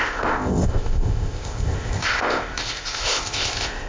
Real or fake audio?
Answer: fake